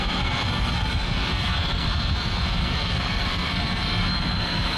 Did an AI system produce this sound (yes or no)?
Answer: yes